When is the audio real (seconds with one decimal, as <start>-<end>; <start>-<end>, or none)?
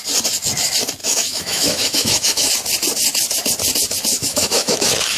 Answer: 0.0-1.0; 2.5-4.1